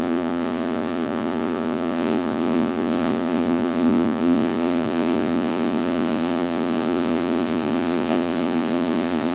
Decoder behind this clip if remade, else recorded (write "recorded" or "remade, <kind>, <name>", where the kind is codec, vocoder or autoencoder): remade, vocoder, Vocos